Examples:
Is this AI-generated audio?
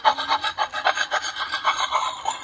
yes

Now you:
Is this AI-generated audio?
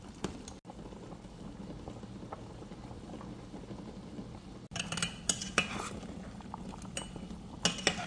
no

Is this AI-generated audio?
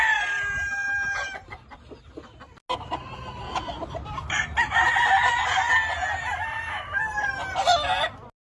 no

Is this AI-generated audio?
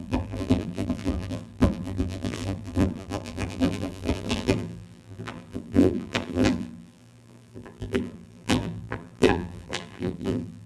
yes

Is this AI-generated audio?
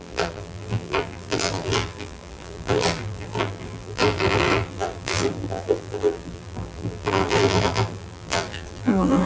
yes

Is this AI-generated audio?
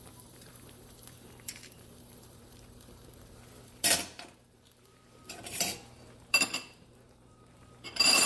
yes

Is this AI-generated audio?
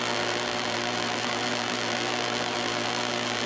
yes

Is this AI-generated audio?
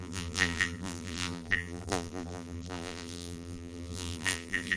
yes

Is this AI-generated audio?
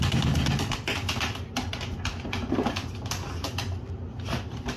no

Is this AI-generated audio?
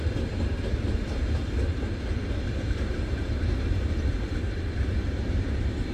yes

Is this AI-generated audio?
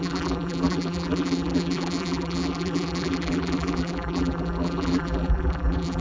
yes